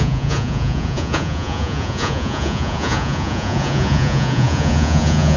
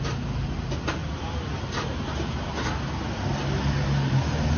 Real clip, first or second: second